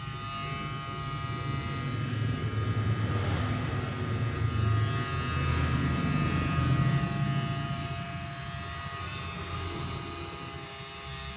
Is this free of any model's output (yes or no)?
yes